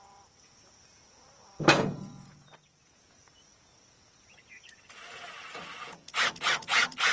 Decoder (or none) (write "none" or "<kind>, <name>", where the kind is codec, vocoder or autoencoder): vocoder, Vocos